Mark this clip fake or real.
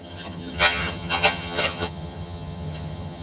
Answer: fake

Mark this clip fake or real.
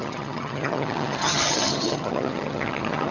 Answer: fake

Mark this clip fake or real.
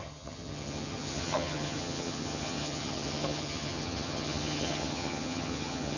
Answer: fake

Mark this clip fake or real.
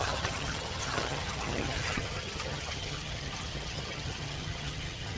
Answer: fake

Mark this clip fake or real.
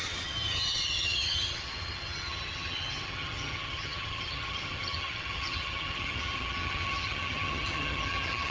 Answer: fake